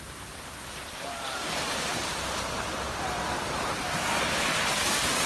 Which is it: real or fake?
fake